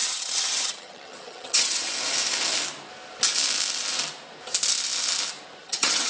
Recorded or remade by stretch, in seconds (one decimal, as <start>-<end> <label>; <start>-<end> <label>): 0.0-1.9 remade; 1.9-5.6 recorded; 5.6-6.1 remade